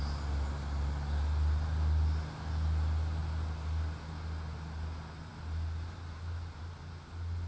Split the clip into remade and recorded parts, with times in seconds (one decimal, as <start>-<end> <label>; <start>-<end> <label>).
0.0-7.5 recorded